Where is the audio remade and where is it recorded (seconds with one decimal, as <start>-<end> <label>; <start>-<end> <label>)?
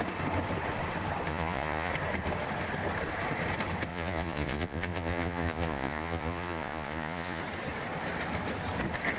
0.0-1.3 recorded; 1.3-1.9 remade; 1.9-3.9 recorded; 3.9-7.4 remade; 7.4-9.2 recorded